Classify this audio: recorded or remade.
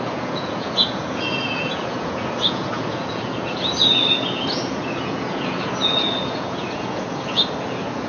remade